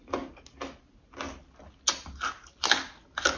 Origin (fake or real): real